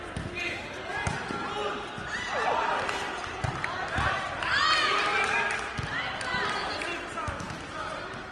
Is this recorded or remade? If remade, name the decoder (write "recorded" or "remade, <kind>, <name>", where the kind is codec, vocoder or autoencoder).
recorded